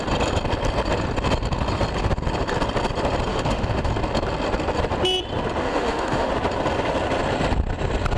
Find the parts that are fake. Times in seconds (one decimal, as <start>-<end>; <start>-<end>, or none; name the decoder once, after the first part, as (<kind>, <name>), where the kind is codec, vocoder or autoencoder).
3.3-3.9 (autoencoder, DAC-VAE); 5.6-6.3